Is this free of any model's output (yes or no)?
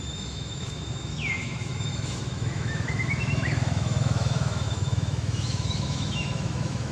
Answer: no